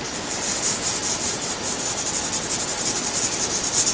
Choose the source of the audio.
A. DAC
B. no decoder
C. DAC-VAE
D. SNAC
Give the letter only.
B